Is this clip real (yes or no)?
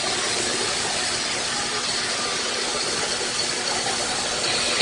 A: yes